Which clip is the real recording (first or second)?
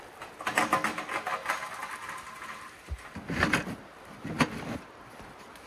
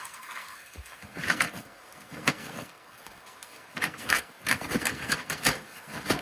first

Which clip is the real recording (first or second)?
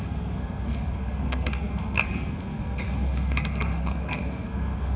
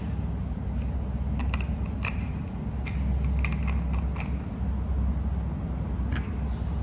second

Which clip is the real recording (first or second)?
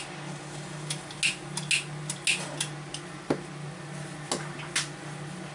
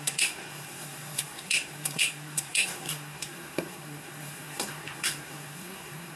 first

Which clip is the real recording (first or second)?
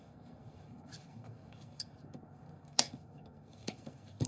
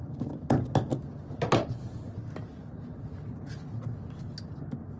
second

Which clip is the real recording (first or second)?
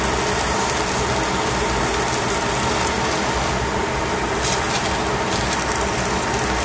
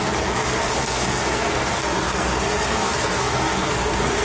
first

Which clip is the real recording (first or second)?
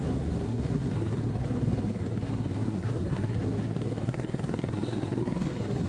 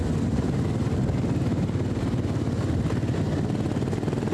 second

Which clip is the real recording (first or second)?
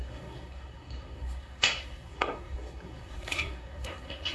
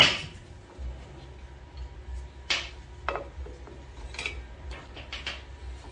second